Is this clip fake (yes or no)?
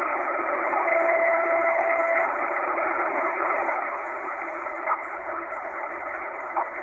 yes